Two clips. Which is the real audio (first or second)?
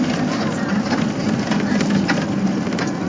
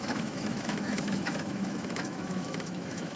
first